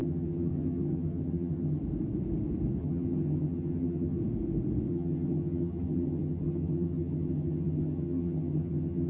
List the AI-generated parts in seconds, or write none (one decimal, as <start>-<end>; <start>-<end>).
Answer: 0.0-1.8; 2.8-4.2; 4.9-9.1